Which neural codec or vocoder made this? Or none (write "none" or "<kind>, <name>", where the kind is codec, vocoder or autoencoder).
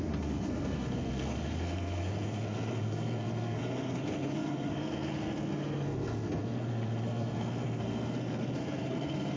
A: codec, SNAC